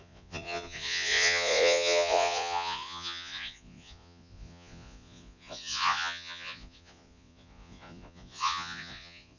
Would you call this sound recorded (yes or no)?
no